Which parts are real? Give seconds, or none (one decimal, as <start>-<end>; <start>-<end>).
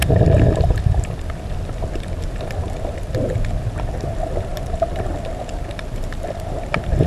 0.0-4.5; 5.1-7.1